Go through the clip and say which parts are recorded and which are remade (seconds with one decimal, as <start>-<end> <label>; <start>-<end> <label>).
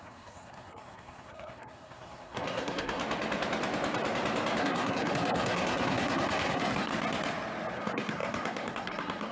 0.0-3.0 remade; 3.0-4.6 recorded; 4.6-6.9 remade; 6.9-7.7 recorded; 7.7-9.3 remade